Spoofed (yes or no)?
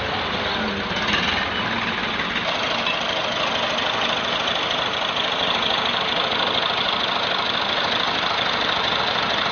no